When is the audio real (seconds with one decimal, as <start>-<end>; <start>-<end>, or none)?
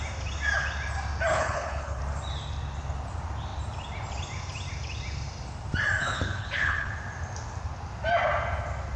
0.0-1.3; 2.0-6.0; 6.9-9.0